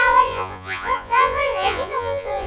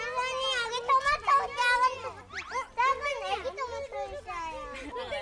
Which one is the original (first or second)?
second